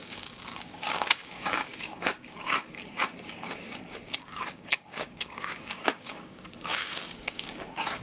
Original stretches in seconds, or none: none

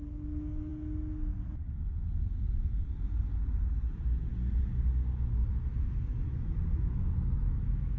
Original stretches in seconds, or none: 0.7-5.5

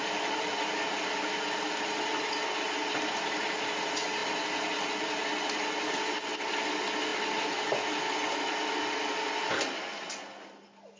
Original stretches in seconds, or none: 0.0-11.0

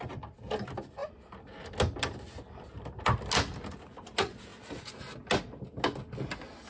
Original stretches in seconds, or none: 0.0-6.7